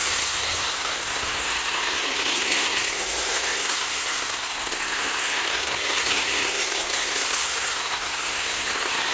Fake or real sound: fake